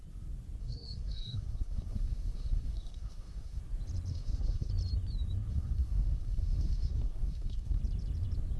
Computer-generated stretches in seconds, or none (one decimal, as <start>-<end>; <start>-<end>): 0.6-3.6; 4.1-4.7; 5.5-7.8